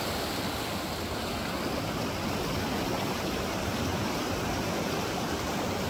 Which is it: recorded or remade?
remade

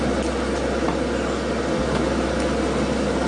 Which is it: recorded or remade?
recorded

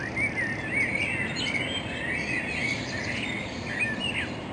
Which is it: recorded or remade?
recorded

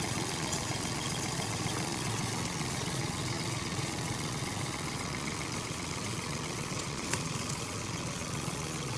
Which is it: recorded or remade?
remade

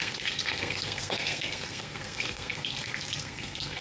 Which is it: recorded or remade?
remade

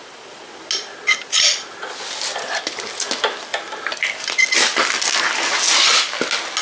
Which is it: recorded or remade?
recorded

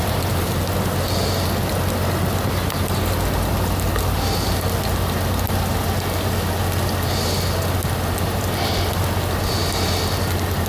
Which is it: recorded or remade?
recorded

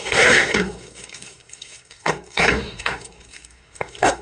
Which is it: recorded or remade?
remade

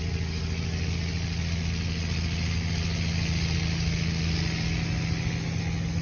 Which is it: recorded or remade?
recorded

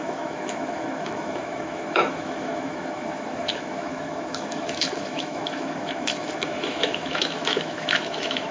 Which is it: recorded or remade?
remade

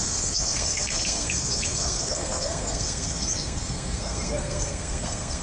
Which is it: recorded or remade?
remade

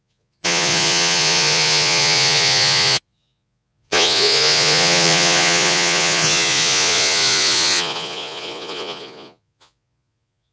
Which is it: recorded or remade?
remade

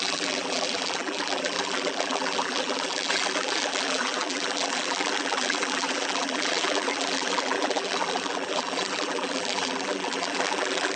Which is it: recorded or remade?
remade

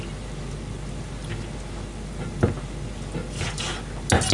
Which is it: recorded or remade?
recorded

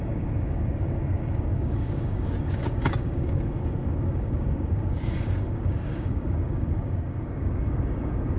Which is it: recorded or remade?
remade